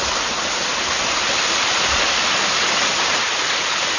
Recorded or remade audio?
recorded